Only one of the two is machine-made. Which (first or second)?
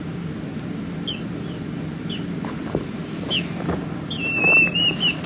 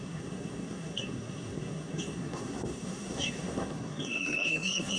second